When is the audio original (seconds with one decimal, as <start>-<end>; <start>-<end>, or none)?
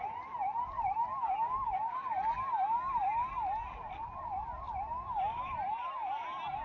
0.0-6.6